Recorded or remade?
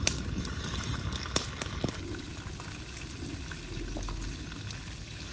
recorded